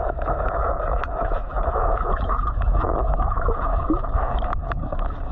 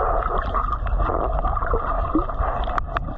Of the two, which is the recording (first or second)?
second